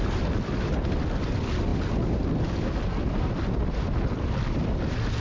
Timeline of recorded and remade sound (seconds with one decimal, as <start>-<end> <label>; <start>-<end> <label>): 0.0-5.2 recorded